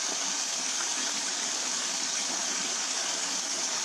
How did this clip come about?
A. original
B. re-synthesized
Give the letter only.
B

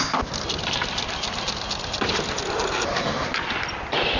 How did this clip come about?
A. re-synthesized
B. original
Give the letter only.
B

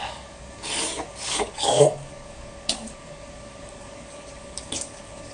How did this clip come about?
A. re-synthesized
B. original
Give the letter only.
A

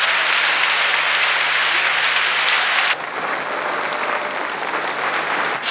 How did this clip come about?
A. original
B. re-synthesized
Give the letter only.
A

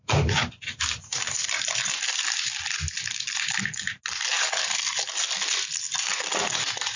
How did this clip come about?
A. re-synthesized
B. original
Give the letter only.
B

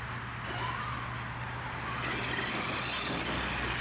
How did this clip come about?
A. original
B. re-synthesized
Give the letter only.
A